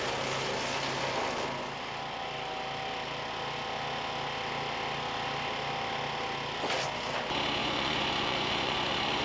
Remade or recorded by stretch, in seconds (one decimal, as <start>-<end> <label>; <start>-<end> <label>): 0.0-7.6 recorded; 7.6-9.2 remade